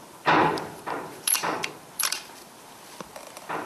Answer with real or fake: fake